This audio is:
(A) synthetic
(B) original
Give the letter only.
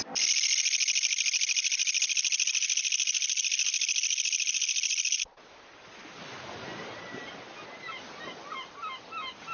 B